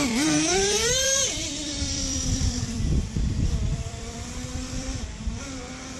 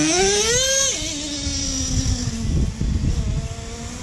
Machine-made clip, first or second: first